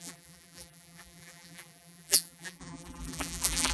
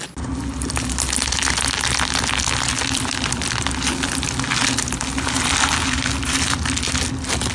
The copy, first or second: first